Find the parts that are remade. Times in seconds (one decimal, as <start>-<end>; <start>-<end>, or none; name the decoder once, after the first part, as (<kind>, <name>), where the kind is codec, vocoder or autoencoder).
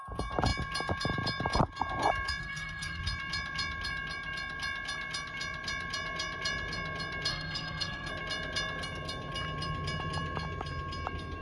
2.4-3.0 (codec, SNAC); 7.3-8.1